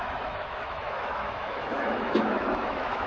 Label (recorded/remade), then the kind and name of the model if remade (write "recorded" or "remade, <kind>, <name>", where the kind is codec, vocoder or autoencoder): remade, autoencoder, DAC-VAE